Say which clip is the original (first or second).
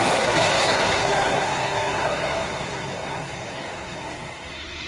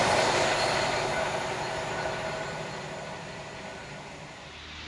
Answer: second